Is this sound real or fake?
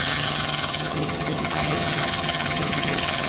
fake